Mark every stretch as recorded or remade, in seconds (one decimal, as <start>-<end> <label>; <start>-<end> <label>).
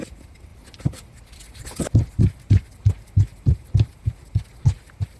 0.0-5.2 recorded